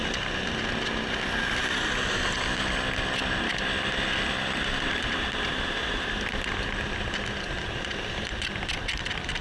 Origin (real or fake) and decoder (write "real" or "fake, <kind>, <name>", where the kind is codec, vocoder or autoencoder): real